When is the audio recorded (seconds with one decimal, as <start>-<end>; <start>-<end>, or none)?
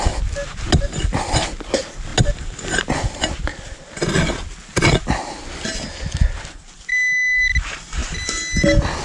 0.0-9.0